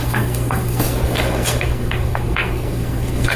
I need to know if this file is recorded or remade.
remade